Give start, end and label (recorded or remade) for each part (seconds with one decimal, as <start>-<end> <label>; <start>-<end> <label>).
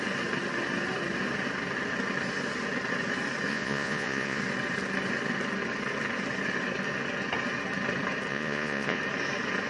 0.0-3.5 recorded; 3.5-4.4 remade; 4.4-8.3 recorded; 8.3-9.0 remade; 9.0-9.7 recorded